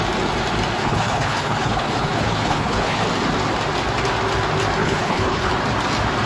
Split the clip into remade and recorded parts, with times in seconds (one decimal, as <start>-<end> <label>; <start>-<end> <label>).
0.0-0.8 recorded; 0.8-3.0 remade; 3.0-4.8 recorded; 4.8-5.5 remade; 5.5-6.3 recorded